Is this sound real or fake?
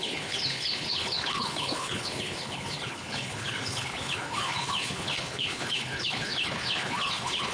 fake